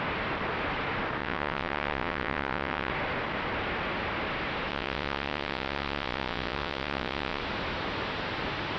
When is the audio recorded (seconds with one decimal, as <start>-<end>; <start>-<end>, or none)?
0.0-1.2; 2.9-4.7; 7.4-8.8